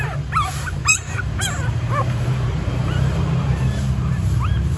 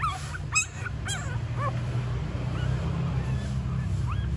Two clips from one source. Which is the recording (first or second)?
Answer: second